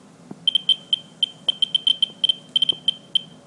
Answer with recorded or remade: recorded